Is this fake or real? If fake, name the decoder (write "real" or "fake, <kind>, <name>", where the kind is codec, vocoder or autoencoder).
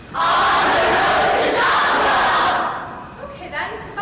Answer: real